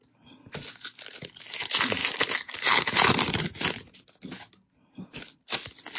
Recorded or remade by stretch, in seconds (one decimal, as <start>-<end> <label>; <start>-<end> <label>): 0.0-6.0 recorded